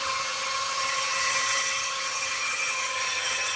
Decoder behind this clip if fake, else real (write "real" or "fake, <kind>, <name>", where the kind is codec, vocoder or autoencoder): fake, vocoder, HiFi-GAN